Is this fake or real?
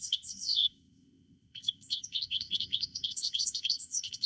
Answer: fake